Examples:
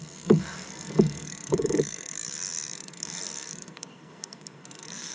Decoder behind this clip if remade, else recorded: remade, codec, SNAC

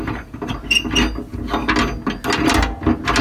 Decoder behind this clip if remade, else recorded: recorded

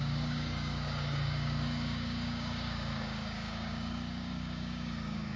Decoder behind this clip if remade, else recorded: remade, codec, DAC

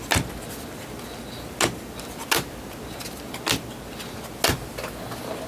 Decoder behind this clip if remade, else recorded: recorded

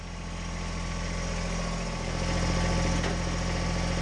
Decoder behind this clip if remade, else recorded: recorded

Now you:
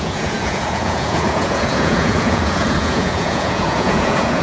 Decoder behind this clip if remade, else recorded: remade, vocoder, Vocos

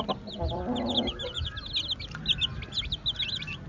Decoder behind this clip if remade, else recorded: recorded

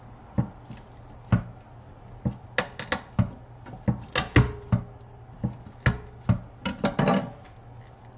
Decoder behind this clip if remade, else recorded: recorded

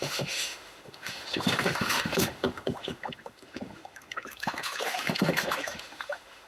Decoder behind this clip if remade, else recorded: remade, autoencoder, DAC-VAE